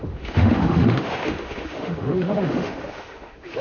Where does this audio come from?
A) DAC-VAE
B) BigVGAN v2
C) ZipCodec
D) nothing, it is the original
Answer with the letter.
A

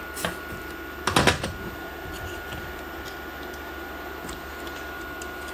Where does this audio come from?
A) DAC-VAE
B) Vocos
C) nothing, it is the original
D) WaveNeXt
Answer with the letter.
C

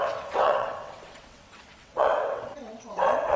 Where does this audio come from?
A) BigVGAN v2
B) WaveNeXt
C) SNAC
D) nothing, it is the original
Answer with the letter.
B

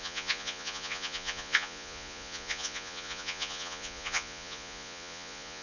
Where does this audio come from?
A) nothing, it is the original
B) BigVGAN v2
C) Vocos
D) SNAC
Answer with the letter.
C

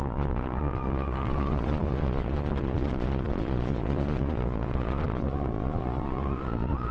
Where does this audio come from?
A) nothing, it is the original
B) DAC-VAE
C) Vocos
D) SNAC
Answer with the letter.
C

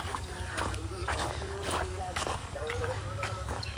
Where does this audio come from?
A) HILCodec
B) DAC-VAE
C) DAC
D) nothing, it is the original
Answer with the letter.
C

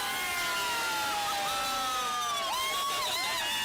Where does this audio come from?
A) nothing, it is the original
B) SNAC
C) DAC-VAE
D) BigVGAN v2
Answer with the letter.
A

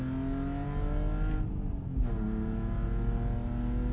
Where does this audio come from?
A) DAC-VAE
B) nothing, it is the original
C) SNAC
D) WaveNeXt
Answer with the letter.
B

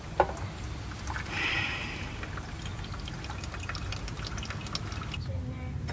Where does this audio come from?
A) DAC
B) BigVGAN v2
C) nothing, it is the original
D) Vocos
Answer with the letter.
C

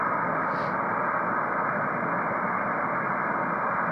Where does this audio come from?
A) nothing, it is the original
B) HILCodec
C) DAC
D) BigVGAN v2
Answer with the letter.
A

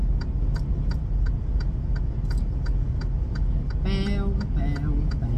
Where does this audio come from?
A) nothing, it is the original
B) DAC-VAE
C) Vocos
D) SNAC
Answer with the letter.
A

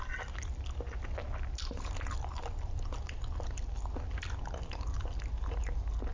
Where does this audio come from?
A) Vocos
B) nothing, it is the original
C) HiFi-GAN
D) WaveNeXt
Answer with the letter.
B